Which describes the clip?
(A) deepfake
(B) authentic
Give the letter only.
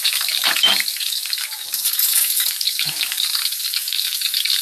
A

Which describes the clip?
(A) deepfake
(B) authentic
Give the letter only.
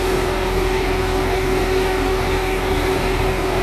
A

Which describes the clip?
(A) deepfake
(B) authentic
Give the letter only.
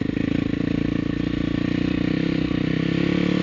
B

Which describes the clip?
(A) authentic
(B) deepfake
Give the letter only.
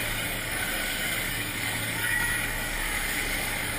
B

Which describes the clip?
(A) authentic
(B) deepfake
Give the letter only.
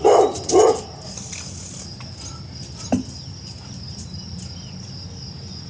A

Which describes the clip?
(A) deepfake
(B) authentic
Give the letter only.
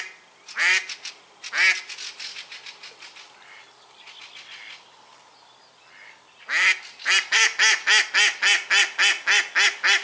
B